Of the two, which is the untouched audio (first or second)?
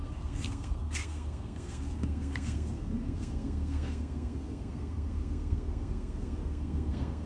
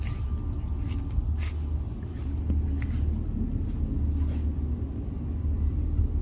second